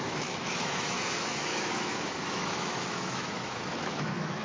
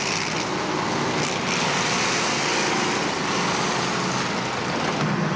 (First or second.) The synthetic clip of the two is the first